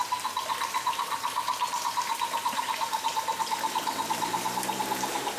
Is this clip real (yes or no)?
yes